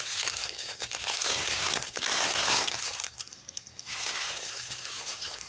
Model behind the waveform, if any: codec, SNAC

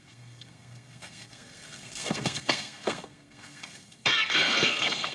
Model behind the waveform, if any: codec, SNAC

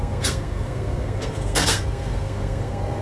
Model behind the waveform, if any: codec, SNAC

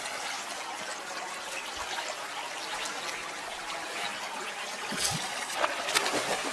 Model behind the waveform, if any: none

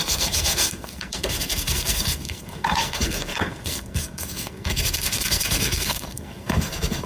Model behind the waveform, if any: codec, SNAC